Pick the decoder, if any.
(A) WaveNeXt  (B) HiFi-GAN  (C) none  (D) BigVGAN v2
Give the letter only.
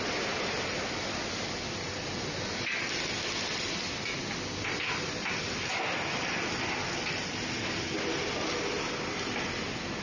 C